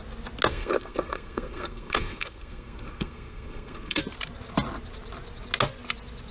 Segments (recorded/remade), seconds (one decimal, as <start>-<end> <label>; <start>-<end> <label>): 0.0-0.5 recorded; 0.5-4.0 remade; 4.0-6.3 recorded